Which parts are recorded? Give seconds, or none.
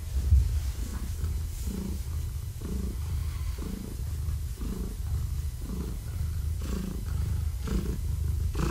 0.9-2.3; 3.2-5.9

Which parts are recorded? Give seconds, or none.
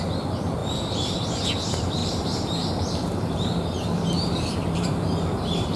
0.0-0.6; 1.2-2.0